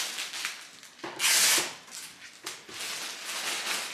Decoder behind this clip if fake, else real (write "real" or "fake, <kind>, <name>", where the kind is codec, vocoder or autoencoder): real